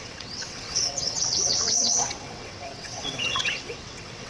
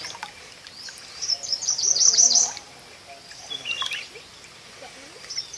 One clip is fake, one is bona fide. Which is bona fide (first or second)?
second